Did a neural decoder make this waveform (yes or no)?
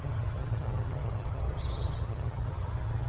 yes